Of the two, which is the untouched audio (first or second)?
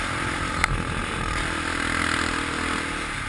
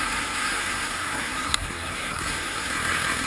first